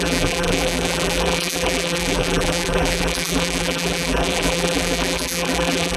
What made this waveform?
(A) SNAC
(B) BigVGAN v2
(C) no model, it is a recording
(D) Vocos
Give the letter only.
B